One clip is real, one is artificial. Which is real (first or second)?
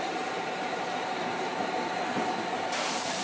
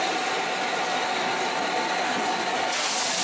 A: second